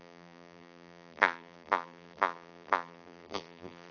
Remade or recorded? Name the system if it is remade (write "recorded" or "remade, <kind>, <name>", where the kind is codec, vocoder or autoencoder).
remade, vocoder, BigVGAN v2